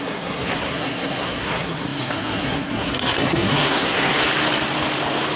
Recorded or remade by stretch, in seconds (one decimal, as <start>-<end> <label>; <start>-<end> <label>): 0.0-4.1 remade; 4.1-5.4 recorded